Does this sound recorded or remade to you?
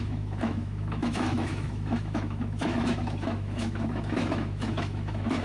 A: remade